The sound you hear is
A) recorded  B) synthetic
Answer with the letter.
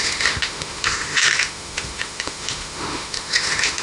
B